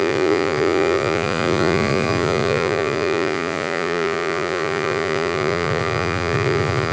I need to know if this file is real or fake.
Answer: fake